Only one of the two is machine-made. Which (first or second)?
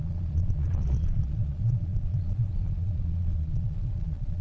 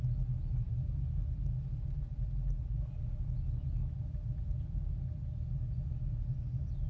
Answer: first